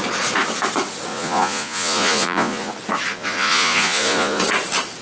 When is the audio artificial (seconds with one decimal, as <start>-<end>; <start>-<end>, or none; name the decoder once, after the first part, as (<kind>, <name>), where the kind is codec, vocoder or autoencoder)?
1.1-2.7 (vocoder, Vocos); 3.1-4.4